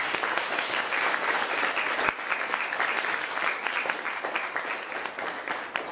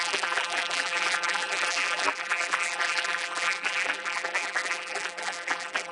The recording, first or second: first